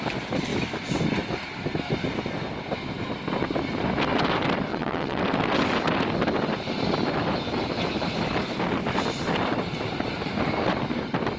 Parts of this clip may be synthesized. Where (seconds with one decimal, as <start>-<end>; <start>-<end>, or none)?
4.7-5.2

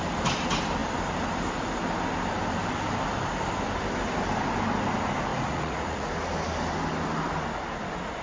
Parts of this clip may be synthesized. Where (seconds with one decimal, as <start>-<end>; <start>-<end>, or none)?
5.3-6.1